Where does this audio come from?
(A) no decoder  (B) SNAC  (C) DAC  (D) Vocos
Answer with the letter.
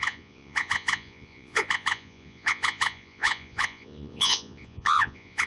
D